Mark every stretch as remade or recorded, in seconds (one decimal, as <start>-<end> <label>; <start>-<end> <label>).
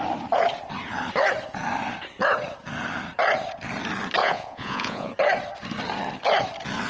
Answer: 0.0-4.2 recorded; 4.2-5.1 remade; 5.1-6.9 recorded